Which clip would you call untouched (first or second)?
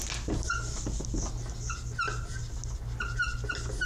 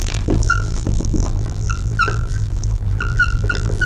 first